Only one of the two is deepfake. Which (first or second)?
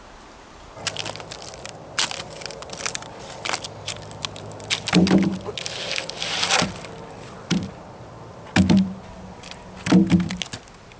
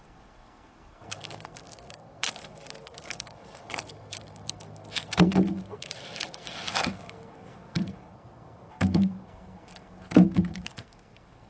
second